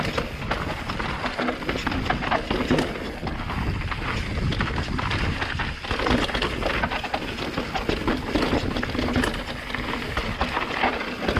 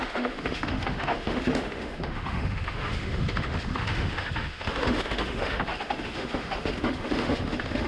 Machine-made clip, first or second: second